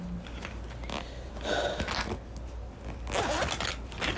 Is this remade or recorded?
recorded